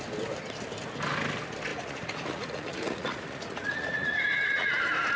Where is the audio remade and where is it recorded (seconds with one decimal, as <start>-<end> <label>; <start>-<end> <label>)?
0.0-1.7 recorded; 1.7-4.8 remade; 4.8-5.2 recorded